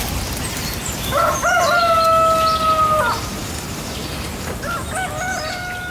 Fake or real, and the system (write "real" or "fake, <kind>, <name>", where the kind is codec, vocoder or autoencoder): real